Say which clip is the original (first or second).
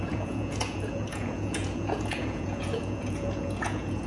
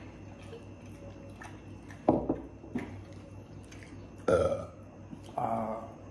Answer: second